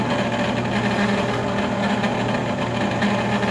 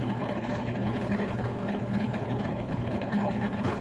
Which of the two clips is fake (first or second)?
second